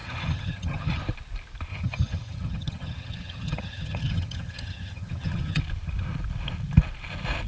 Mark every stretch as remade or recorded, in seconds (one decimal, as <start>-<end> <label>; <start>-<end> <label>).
0.0-1.0 remade; 1.0-1.7 recorded; 1.7-5.6 remade; 5.6-7.5 recorded